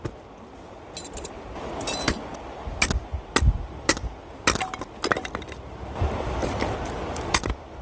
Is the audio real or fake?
real